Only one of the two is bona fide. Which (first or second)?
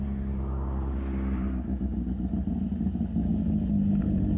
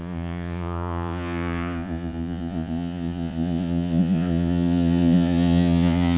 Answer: first